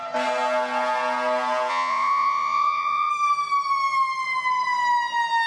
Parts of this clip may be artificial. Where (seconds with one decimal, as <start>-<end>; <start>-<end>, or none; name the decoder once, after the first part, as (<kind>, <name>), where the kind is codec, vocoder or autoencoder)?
1.7-3.1 (vocoder, Vocos)